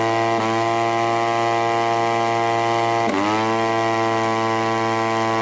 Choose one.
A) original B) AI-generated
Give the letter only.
A